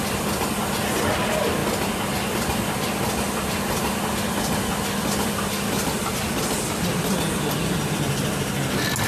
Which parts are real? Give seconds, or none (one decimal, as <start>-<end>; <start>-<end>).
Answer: 0.0-9.1